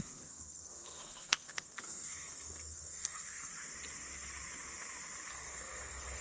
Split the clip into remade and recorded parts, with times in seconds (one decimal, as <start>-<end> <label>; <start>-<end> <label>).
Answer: 0.0-3.5 remade; 3.5-5.3 recorded; 5.3-6.2 remade

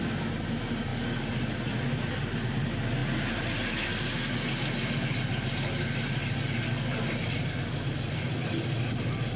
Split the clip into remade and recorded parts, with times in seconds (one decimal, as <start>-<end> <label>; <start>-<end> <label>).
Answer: 0.0-9.4 recorded

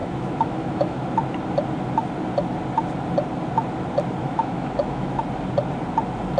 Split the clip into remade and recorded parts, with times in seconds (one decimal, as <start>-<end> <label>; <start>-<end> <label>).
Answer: 0.0-1.0 remade; 1.0-4.2 recorded; 4.2-5.2 remade; 5.2-6.4 recorded

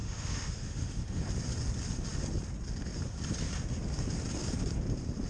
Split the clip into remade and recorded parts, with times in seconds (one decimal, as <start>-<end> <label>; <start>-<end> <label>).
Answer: 0.0-1.2 remade; 1.2-5.3 recorded

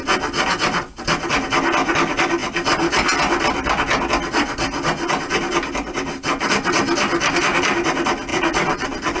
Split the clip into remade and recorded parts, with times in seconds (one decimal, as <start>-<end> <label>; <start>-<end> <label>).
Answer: 0.0-8.3 recorded; 8.3-9.2 remade

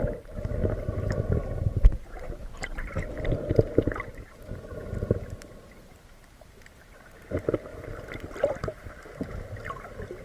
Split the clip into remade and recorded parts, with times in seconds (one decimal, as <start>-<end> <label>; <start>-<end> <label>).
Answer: 0.0-0.6 recorded; 0.6-4.3 remade; 4.3-10.2 recorded